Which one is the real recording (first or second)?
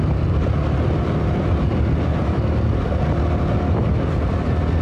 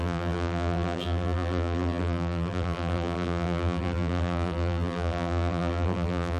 first